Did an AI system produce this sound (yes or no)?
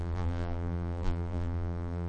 yes